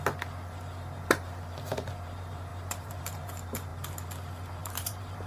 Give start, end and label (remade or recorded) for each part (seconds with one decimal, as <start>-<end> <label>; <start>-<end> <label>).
0.0-3.7 remade; 3.7-4.6 recorded; 4.6-5.3 remade